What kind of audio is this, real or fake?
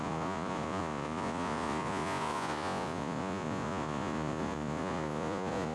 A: fake